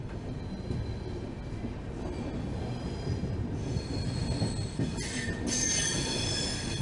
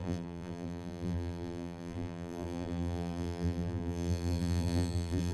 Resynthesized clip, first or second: second